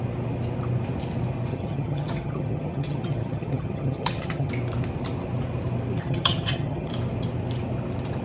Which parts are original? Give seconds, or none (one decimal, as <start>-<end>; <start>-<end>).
0.0-1.5; 4.5-6.0; 6.9-8.2